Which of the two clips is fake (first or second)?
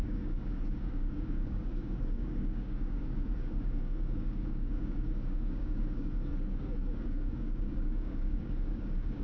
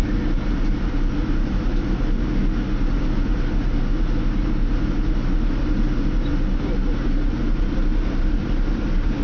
first